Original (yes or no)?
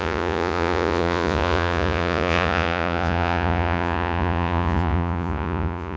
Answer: no